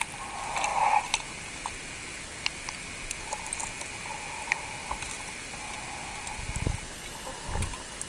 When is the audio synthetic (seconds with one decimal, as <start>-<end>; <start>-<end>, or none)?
4.8-5.5